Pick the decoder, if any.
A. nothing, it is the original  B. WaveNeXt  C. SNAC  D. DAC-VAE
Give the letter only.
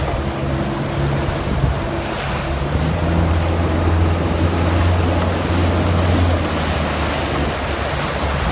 A